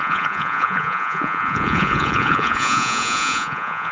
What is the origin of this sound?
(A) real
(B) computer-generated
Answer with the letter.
B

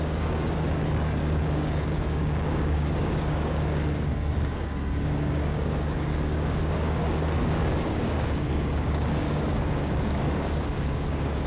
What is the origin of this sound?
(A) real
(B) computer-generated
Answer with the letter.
B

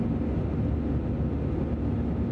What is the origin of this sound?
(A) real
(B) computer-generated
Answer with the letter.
A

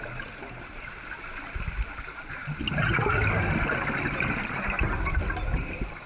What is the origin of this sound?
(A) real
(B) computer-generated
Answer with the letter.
A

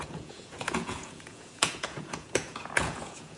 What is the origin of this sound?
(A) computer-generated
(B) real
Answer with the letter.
A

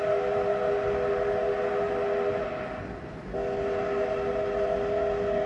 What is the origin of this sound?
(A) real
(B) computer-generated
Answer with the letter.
A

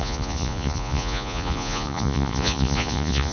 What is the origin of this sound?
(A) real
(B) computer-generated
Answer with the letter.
B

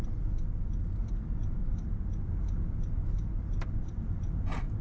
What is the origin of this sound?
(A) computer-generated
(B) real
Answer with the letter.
B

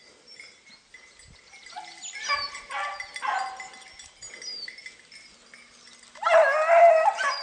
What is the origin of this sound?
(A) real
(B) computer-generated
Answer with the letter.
A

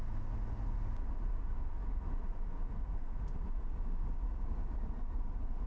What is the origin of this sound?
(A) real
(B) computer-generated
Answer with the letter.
A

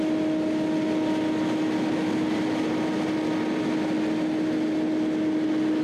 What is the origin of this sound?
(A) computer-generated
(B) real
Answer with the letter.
B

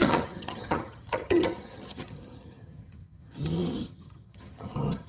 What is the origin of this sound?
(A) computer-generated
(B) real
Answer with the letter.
A